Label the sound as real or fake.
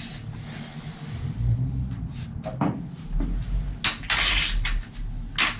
real